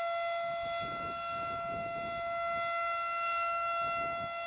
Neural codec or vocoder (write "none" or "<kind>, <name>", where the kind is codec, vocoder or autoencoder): none